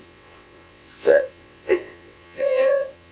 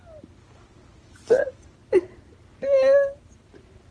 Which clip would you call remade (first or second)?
first